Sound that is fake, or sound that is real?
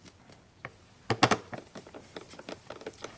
real